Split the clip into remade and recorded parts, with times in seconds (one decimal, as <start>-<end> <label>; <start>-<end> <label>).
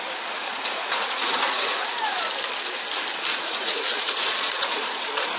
0.0-0.4 recorded; 0.4-2.2 remade; 2.2-3.3 recorded; 3.3-5.0 remade; 5.0-5.4 recorded